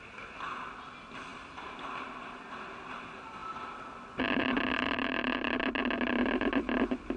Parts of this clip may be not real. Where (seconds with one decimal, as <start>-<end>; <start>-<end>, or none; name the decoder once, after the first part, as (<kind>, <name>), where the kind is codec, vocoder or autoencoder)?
none

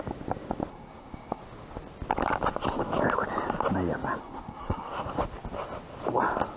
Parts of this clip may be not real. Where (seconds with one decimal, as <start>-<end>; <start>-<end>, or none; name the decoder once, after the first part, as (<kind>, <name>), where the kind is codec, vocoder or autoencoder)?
0.7-1.4 (codec, SNAC); 4.2-4.9

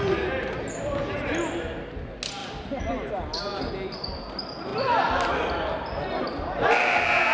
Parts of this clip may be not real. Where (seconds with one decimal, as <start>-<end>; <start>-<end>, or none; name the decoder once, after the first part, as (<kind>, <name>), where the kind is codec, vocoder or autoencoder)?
none

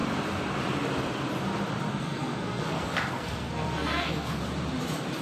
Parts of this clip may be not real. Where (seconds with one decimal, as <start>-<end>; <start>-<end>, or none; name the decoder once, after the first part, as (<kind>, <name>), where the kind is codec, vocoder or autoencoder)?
1.9-4.4 (codec, SNAC)

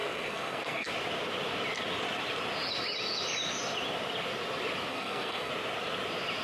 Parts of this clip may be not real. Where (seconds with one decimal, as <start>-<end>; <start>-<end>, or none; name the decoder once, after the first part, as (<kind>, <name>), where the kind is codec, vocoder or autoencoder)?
0.0-0.9 (codec, SNAC); 4.9-5.5

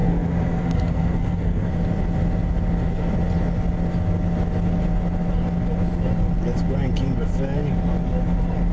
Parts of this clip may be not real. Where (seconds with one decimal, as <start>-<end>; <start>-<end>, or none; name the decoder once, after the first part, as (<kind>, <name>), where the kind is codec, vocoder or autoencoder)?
0.0-1.7 (codec, SNAC)

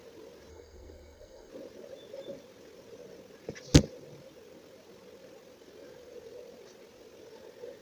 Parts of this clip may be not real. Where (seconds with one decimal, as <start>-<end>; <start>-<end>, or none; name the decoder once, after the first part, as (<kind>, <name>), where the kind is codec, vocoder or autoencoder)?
0.5-1.5 (codec, SNAC)

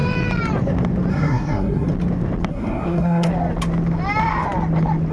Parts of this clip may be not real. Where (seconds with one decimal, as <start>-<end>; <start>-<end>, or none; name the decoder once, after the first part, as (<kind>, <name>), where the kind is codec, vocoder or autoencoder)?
1.1-1.9 (codec, SNAC); 2.5-3.3